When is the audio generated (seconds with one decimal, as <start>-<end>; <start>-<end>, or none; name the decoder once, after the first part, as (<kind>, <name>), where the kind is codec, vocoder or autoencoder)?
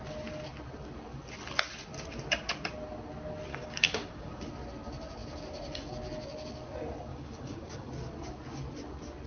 3.5-4.3 (codec, DAC); 7.1-7.9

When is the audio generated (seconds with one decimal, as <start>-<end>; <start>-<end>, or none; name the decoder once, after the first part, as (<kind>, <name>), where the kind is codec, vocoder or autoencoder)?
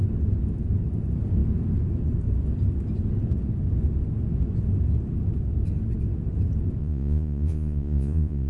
6.8-8.5 (vocoder, Vocos)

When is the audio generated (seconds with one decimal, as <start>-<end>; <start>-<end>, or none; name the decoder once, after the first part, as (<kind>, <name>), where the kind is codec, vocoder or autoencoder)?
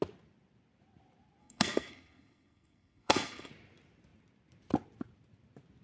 1.4-3.5 (codec, SNAC)